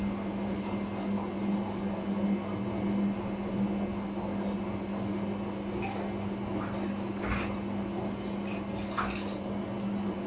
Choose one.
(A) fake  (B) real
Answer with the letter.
B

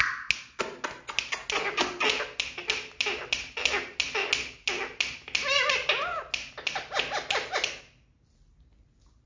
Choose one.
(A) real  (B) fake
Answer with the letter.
A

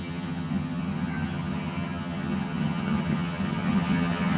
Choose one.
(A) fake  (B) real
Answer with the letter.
A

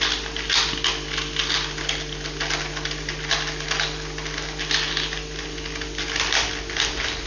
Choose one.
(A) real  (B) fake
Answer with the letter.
A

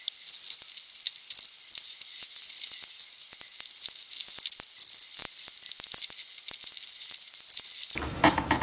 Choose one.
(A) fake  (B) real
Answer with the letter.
B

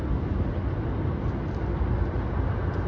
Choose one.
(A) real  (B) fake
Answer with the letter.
A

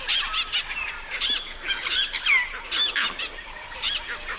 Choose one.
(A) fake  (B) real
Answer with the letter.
B